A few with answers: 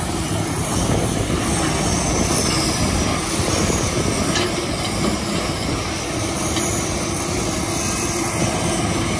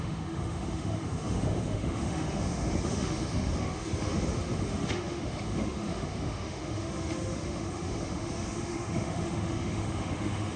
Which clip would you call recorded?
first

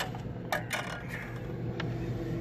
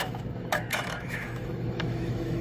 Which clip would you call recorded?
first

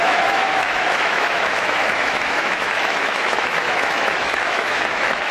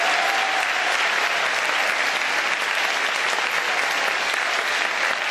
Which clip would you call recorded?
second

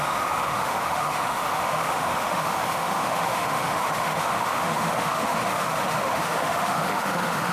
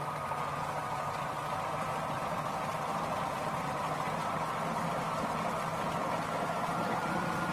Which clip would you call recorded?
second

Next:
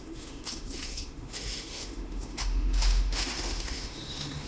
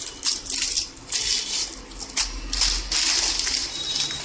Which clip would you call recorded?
second